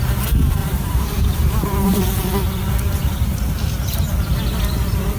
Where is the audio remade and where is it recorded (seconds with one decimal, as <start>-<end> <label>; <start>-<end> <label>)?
0.0-0.6 recorded; 0.6-2.0 remade; 2.0-5.2 recorded